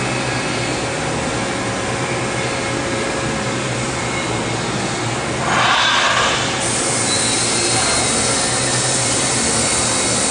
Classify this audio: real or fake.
real